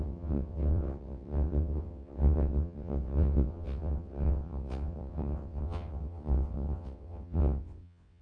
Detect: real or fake fake